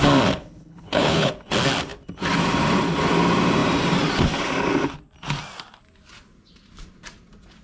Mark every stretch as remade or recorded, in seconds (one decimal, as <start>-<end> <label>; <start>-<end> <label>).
0.0-0.4 recorded; 0.4-1.3 remade; 1.3-7.6 recorded